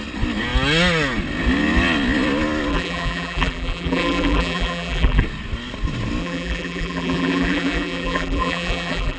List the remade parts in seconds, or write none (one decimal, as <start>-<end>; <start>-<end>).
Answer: 2.7-5.2; 6.2-9.2